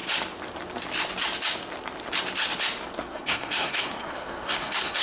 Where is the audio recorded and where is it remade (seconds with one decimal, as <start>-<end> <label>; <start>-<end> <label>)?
0.0-3.0 recorded; 3.0-5.0 remade